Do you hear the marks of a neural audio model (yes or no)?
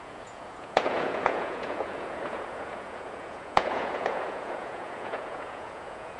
yes